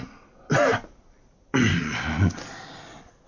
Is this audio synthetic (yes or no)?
no